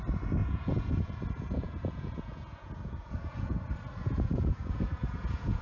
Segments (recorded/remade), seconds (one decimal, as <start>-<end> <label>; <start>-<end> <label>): 0.0-0.4 recorded; 0.4-3.6 remade; 3.6-4.0 recorded; 4.0-5.6 remade